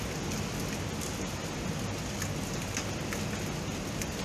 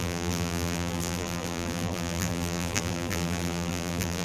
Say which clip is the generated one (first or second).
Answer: second